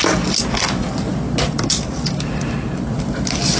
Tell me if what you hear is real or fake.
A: real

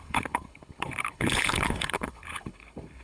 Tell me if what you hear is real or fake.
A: fake